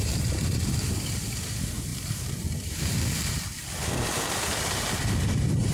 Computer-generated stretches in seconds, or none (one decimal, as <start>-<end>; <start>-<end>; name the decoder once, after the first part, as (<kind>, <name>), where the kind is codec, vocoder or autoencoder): none